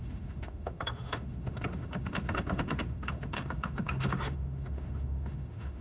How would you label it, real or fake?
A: fake